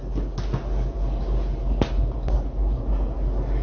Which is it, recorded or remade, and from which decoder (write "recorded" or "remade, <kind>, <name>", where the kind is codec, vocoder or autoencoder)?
recorded